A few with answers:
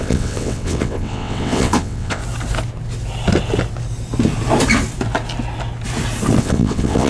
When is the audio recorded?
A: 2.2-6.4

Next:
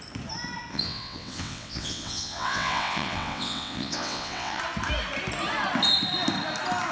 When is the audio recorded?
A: 0.0-0.7; 4.6-6.9

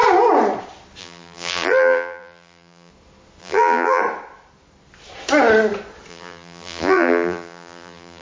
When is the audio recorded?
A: 0.0-1.0; 2.9-3.4; 4.0-6.1

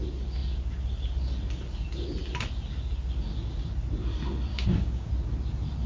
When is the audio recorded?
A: 0.0-4.5; 5.1-5.9

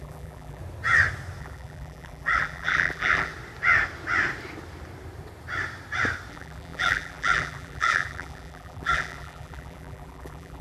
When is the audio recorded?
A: 0.6-1.4; 3.3-6.3

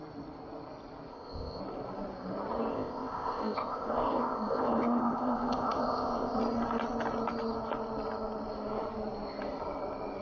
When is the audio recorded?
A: 0.0-1.1; 1.6-2.7; 6.4-10.2

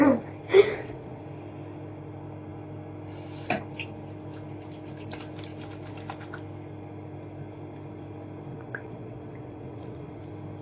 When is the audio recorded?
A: 0.0-0.5; 1.2-8.5; 10.2-10.6

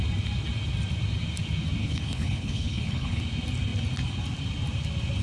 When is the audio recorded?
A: 0.0-1.8; 3.2-5.2